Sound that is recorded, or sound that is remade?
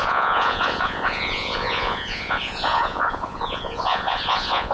remade